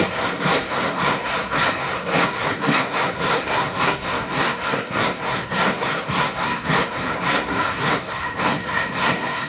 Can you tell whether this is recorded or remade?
remade